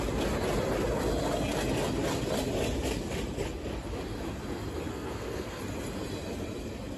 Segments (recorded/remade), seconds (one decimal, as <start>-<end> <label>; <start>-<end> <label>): 0.0-4.9 recorded; 4.9-5.6 remade; 5.6-7.0 recorded